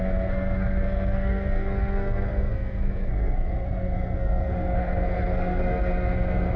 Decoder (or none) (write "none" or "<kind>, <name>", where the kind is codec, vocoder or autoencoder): codec, SNAC